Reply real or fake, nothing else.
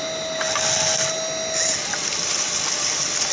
real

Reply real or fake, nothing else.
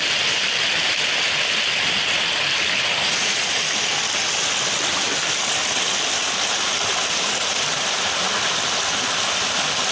real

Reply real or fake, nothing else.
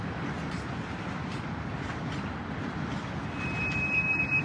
real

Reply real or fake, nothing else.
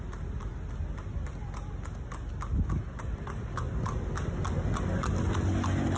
real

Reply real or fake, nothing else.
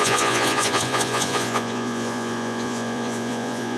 fake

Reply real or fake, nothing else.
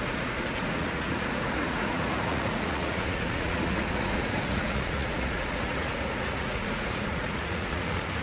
fake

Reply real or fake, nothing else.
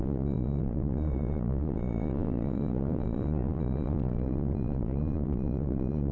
fake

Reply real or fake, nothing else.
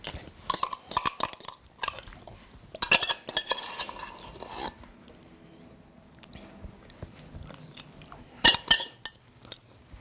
real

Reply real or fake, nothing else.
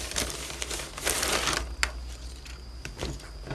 real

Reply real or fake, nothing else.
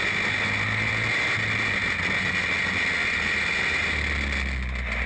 real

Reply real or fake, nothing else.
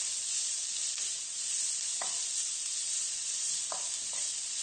real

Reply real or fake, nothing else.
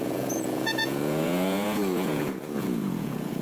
fake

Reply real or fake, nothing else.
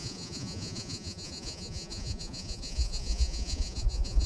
fake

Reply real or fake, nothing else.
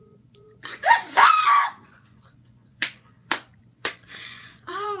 fake